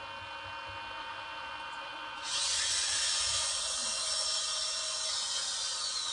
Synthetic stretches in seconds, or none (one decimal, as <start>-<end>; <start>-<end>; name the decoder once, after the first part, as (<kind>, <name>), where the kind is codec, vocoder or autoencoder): 1.0-6.1 (vocoder, Vocos)